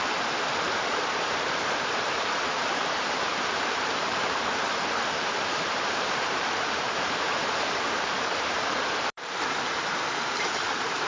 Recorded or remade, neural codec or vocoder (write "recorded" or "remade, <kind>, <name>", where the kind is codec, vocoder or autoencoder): remade, vocoder, BigVGAN v2